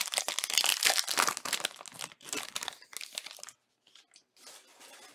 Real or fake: real